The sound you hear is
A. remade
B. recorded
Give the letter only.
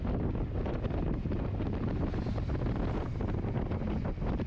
B